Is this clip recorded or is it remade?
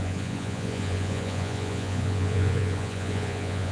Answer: remade